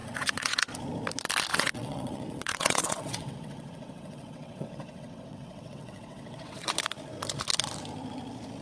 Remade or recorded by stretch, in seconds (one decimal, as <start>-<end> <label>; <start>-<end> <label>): 0.0-0.6 remade; 0.6-1.5 recorded; 1.5-6.7 remade; 6.7-8.6 recorded